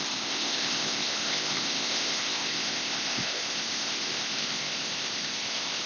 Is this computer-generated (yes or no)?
yes